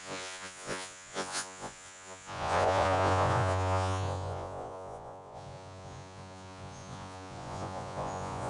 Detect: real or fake fake